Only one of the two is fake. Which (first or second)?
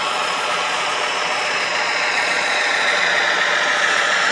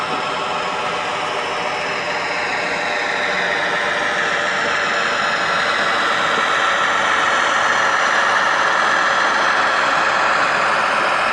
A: first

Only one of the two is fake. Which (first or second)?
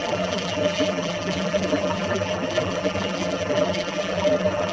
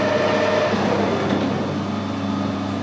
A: first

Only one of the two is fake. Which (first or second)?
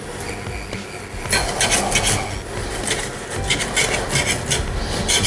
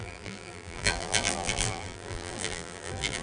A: second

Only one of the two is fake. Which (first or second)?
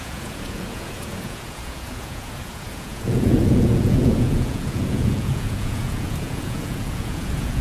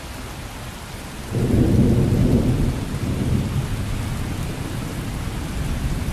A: first